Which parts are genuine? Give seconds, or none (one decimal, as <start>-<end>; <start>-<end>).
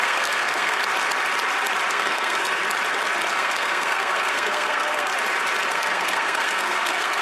0.8-1.9; 2.6-3.3; 5.1-5.7